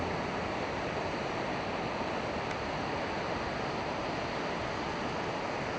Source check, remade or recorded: recorded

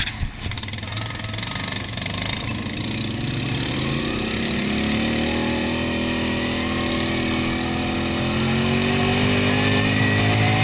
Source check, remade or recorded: recorded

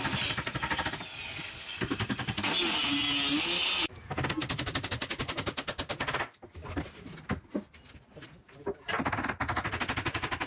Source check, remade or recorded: recorded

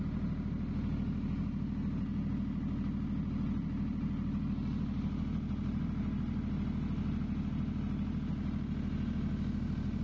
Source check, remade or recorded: recorded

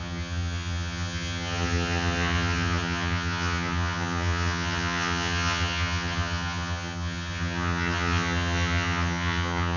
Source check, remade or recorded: remade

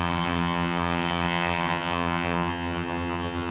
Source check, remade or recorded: remade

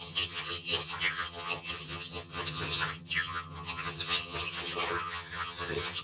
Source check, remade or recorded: remade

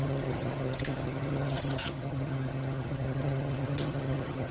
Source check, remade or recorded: remade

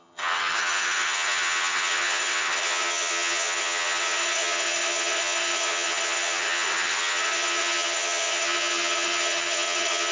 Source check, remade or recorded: remade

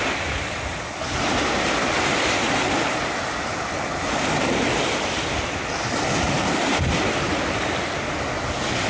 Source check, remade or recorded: recorded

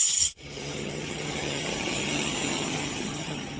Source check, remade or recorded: remade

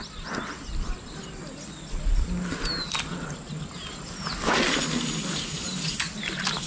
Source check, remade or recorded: recorded